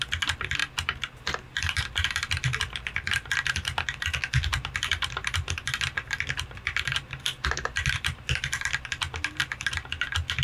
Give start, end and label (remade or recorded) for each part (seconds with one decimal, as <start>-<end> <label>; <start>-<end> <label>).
0.0-10.4 recorded